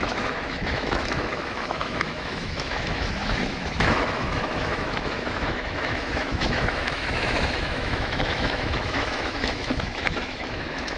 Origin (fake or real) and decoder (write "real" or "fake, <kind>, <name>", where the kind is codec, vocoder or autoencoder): fake, autoencoder, DAC-VAE